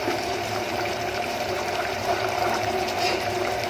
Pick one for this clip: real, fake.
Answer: fake